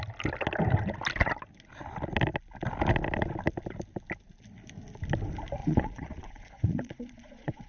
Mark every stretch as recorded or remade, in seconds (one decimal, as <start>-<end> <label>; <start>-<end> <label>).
0.0-5.6 recorded; 5.6-7.7 remade